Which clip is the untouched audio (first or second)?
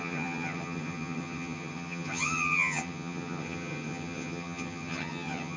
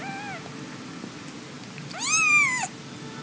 second